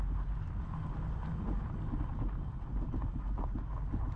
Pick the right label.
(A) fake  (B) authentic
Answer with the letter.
B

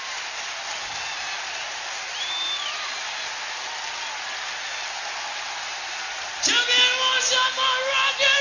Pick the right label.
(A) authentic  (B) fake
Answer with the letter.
A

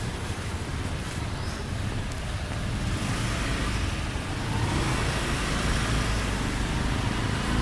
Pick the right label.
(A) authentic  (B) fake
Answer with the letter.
A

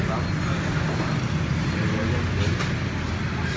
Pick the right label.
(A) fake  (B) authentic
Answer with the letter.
B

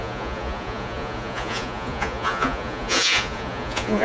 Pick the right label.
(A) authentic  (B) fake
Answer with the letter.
B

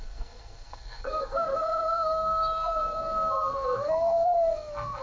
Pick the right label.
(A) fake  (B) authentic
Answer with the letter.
A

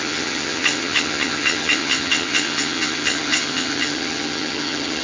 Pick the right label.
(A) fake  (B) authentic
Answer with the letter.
A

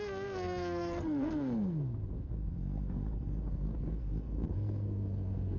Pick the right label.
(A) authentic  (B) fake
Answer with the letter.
B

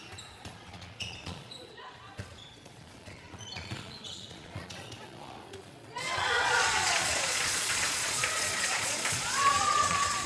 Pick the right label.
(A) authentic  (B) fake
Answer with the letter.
B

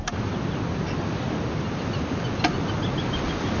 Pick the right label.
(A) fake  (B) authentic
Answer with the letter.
B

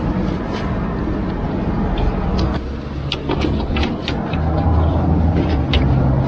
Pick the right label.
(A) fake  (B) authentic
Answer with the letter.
B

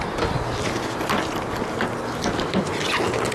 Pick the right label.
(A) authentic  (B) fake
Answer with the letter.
A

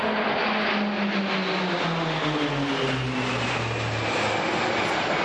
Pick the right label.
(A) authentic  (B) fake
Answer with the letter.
A